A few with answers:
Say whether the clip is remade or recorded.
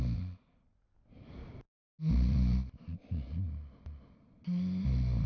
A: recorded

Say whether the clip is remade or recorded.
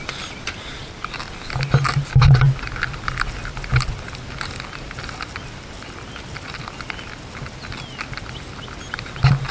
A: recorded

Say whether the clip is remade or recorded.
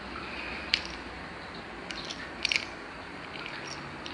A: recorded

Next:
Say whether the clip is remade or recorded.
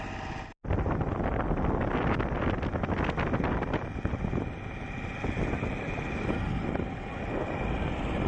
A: recorded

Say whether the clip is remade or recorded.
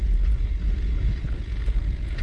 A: remade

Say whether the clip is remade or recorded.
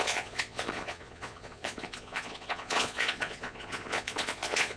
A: remade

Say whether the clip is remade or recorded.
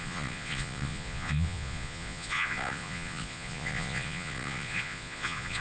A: remade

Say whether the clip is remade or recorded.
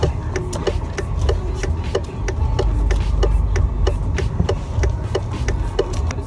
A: recorded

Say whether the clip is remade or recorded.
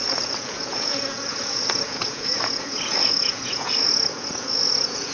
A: remade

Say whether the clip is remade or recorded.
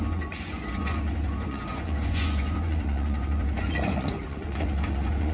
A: remade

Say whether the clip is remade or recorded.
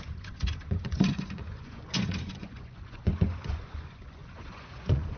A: remade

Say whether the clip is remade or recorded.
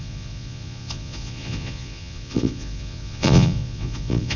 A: remade